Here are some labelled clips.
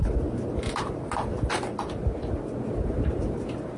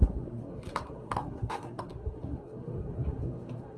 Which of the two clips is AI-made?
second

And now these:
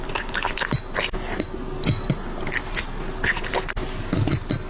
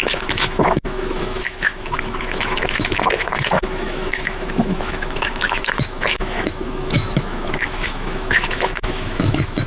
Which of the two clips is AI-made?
second